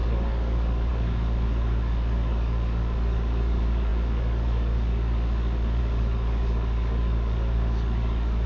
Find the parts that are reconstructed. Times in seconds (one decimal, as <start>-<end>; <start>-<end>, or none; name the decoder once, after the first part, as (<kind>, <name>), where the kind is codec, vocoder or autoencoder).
0.0-8.5 (codec, DAC)